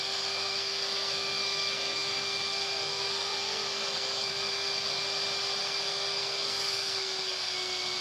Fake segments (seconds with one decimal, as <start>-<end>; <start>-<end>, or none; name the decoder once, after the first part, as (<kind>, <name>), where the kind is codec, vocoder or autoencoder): 0.0-5.0 (codec, SNAC); 5.6-8.0